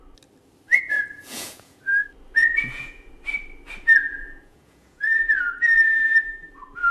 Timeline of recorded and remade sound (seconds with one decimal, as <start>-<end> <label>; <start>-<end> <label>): 0.0-0.7 recorded; 0.7-1.8 remade; 1.8-2.4 recorded; 2.4-3.1 remade; 3.1-4.1 recorded; 4.1-5.4 remade; 5.4-6.9 recorded